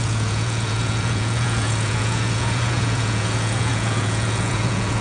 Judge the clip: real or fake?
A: fake